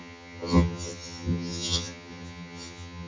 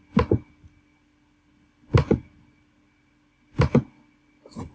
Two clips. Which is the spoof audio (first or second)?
first